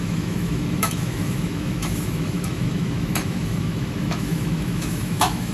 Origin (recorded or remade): remade